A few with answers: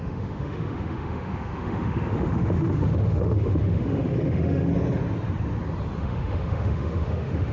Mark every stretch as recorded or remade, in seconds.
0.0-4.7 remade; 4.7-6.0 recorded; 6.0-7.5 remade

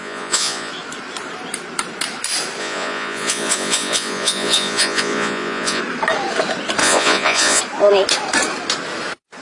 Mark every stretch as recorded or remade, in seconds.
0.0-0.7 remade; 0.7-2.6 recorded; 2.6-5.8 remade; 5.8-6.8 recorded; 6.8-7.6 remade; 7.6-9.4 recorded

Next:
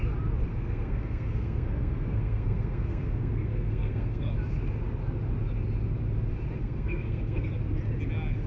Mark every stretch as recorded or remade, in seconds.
0.0-0.5 recorded; 0.5-4.3 remade; 4.3-6.6 recorded; 6.6-7.5 remade; 7.5-8.5 recorded